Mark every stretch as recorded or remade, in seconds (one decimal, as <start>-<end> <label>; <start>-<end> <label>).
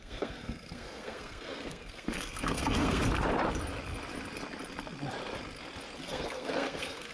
0.0-3.0 remade; 3.0-6.0 recorded; 6.0-7.1 remade